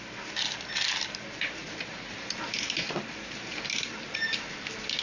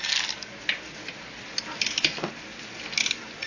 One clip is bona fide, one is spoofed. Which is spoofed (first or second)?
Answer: first